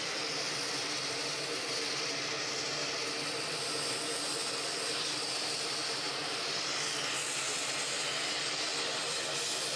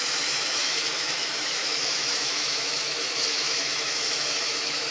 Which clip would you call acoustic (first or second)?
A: first